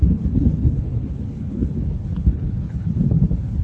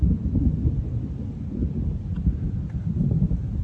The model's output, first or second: first